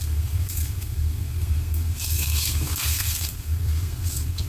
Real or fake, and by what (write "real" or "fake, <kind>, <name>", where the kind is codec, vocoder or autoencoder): fake, codec, SNAC